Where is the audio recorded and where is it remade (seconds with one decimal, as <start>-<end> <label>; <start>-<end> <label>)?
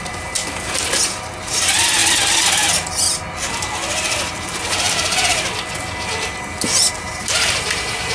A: 0.0-8.1 recorded